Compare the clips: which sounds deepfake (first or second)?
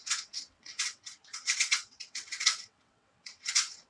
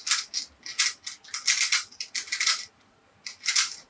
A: first